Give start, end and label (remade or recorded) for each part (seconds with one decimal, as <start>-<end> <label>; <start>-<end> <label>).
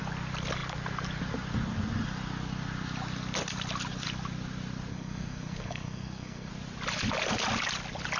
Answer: 0.0-4.9 recorded; 4.9-6.5 remade; 6.5-8.2 recorded